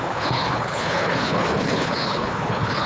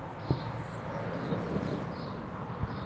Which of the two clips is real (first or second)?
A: second